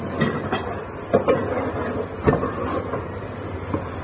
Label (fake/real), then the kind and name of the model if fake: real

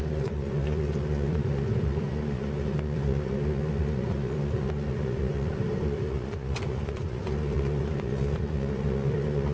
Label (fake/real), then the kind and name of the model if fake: fake, vocoder, Vocos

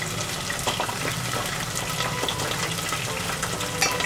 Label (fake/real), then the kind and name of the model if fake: real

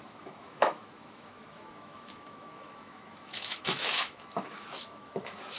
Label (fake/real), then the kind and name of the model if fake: fake, autoencoder, DAC-VAE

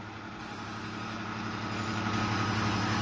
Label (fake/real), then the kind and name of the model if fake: real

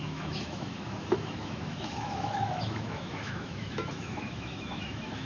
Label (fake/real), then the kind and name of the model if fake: fake, autoencoder, DAC-VAE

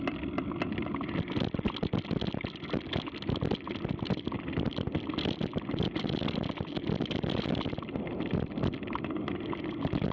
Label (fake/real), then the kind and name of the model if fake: real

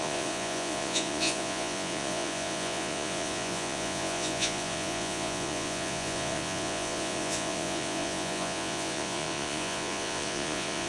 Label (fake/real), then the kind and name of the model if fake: fake, vocoder, Vocos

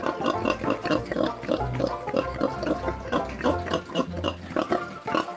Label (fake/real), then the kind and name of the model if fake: real